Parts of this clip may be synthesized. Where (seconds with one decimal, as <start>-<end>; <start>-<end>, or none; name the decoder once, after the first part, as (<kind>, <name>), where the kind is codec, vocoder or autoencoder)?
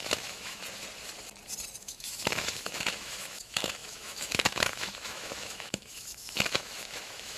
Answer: 0.0-0.6 (autoencoder, DAC-VAE); 1.8-7.4